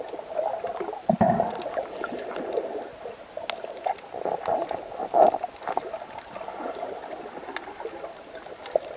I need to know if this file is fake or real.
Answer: real